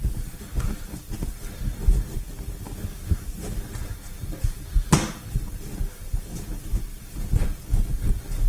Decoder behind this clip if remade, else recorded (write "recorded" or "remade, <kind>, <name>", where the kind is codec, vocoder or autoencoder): recorded